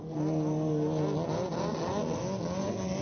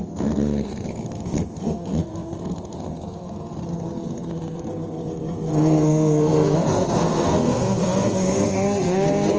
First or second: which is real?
first